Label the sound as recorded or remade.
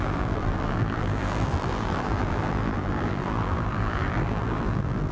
remade